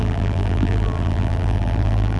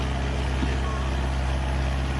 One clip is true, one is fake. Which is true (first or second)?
second